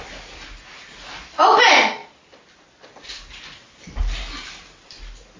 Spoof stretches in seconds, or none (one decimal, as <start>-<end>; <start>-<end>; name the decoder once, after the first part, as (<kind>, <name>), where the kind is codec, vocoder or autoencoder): none